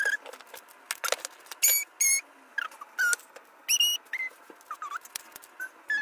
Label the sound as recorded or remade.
recorded